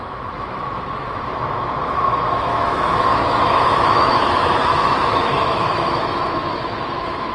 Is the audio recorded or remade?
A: remade